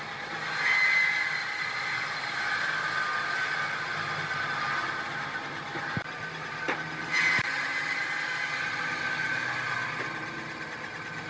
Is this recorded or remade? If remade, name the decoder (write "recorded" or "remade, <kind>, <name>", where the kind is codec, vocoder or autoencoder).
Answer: recorded